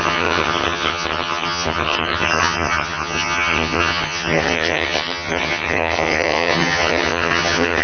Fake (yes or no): yes